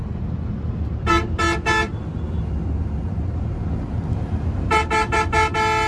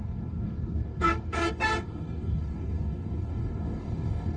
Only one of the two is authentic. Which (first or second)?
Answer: first